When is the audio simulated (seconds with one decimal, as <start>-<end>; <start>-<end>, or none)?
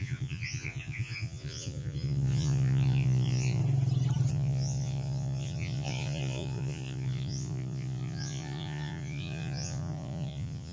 0.0-3.6; 4.3-10.7